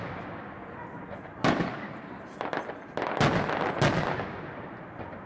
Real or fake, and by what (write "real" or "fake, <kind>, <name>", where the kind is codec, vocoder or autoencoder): real